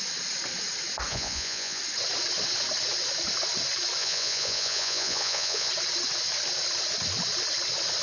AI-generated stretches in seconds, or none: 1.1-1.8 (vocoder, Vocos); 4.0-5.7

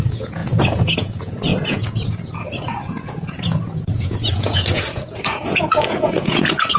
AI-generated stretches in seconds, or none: 0.0-6.8 (vocoder, Vocos)

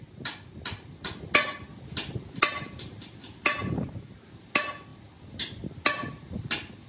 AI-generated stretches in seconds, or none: none

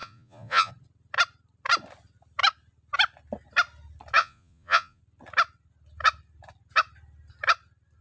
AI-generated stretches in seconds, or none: 0.0-0.7 (vocoder, Vocos); 4.2-5.0

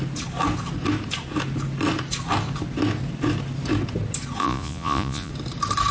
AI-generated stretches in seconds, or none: 4.4-5.3 (vocoder, Vocos)